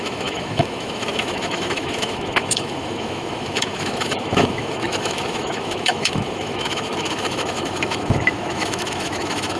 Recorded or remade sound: remade